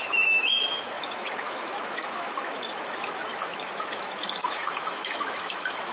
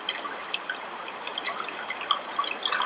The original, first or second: second